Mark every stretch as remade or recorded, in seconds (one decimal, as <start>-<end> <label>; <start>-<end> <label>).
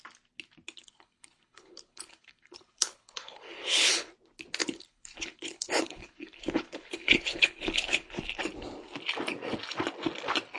0.0-0.8 recorded; 0.8-4.1 remade; 4.1-4.6 recorded; 4.6-8.4 remade; 8.4-10.6 recorded